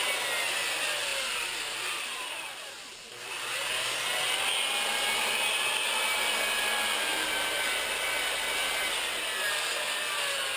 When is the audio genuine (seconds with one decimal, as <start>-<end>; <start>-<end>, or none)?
0.0-7.1; 8.8-10.6